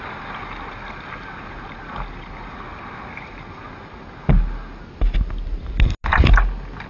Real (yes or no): yes